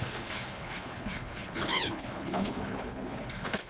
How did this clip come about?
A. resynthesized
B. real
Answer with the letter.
A